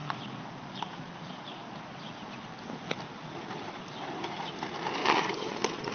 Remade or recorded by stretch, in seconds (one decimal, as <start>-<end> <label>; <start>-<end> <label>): 0.0-2.5 remade; 2.5-5.0 recorded; 5.0-5.9 remade